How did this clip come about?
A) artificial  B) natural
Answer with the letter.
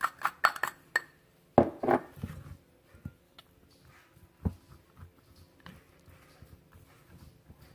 B